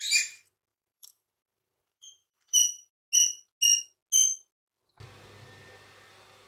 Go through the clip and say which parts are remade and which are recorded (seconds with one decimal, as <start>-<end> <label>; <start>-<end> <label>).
0.0-0.7 recorded; 0.7-2.9 remade; 2.9-6.5 recorded